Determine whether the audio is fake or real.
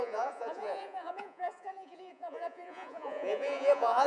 fake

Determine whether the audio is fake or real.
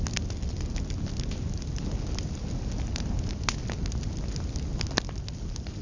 real